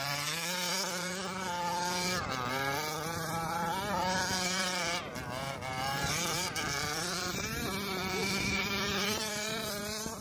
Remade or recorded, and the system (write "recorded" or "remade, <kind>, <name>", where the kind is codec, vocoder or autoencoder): remade, vocoder, BigVGAN v2